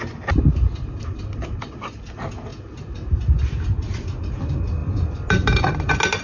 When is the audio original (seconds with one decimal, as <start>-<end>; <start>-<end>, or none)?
0.0-6.2